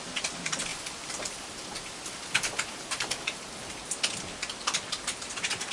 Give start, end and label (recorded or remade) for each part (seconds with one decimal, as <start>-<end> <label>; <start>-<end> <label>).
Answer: 0.0-0.7 recorded; 0.7-3.8 remade; 3.8-5.7 recorded